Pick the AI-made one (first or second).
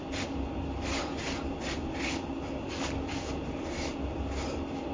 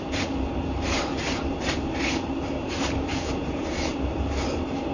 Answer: second